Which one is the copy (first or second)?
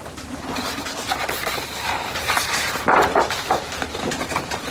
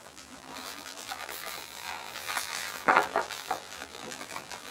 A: second